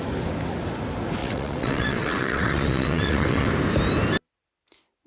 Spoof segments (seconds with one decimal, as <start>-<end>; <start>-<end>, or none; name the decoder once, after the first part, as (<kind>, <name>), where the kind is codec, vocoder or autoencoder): 1.2-3.5 (vocoder, WaveNeXt)